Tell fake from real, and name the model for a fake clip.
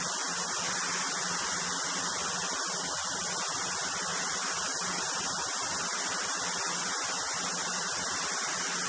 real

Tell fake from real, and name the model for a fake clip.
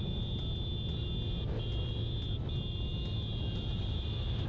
real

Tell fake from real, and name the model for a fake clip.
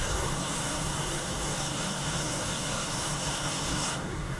fake, codec, SNAC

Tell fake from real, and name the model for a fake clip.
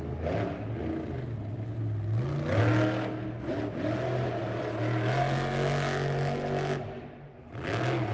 real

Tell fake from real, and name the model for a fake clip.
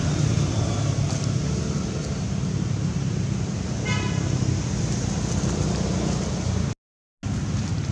real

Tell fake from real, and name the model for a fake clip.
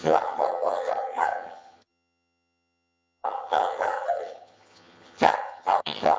fake, vocoder, HiFi-GAN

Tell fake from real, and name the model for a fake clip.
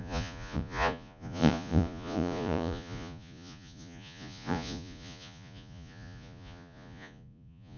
fake, vocoder, Vocos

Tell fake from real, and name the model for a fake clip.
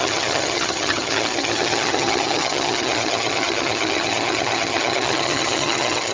fake, vocoder, HiFi-GAN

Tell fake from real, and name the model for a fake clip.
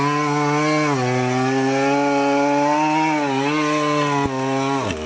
real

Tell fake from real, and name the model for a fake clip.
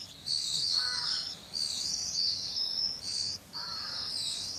fake, codec, DAC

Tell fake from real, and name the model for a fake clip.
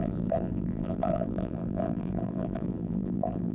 fake, vocoder, BigVGAN v2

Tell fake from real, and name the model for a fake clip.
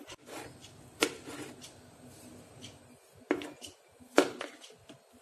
real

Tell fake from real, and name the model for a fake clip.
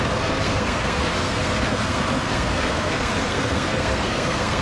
fake, codec, SNAC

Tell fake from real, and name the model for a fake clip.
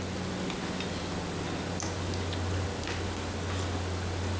real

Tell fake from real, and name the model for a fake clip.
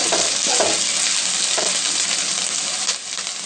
real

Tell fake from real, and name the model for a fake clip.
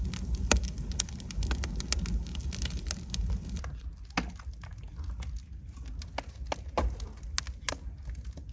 real